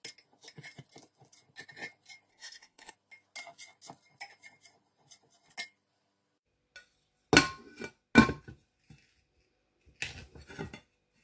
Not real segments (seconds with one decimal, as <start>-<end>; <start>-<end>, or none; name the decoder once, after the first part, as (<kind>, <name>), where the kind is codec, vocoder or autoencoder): 2.3-2.9 (codec, SNAC)